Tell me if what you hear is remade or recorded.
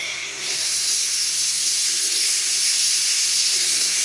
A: remade